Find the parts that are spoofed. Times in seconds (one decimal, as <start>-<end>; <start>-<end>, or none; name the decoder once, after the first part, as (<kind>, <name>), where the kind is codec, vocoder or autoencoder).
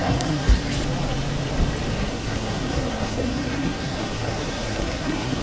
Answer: 0.0-0.6 (codec, SNAC); 1.9-5.4